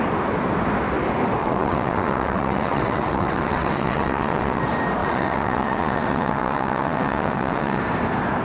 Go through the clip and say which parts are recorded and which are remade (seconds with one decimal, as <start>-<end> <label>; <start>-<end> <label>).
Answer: 0.0-1.4 recorded; 1.4-4.6 remade; 4.6-5.0 recorded; 5.0-7.8 remade; 7.8-8.4 recorded